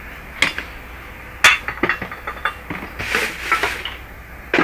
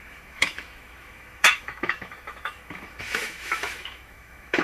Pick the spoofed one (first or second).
second